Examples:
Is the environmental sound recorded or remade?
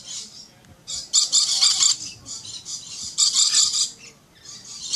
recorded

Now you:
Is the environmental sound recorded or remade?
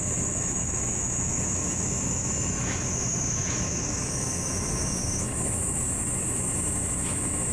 remade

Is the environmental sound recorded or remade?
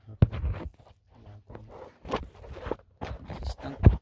recorded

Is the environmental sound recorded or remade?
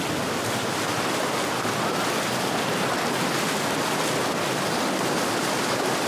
recorded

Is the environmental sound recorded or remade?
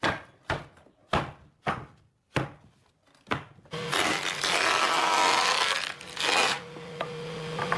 recorded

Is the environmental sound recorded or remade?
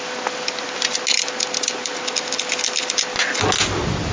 recorded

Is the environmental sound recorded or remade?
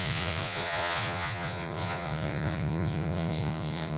remade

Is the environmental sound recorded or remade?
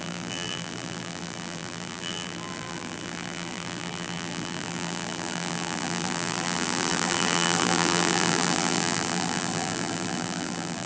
remade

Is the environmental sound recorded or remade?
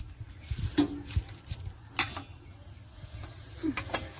recorded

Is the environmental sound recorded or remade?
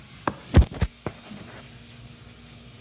recorded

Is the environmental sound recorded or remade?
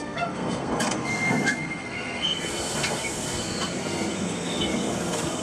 remade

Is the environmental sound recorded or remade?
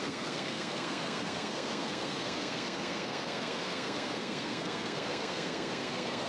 remade